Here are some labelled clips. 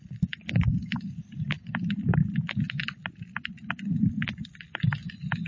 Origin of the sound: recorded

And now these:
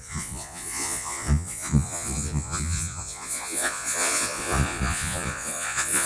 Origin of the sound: remade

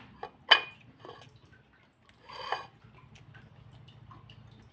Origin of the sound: recorded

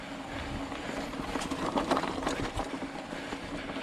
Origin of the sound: recorded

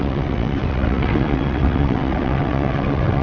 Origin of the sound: remade